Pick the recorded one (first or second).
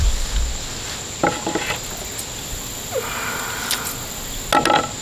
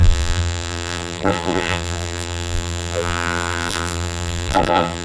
first